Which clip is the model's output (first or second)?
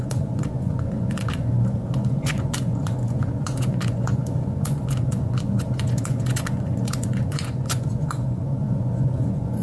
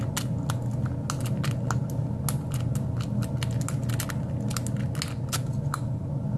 first